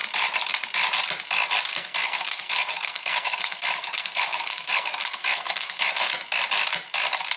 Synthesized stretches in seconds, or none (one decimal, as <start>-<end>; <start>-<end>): 1.7-6.1